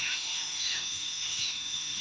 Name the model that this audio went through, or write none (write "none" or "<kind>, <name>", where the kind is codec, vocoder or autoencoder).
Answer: autoencoder, DAC-VAE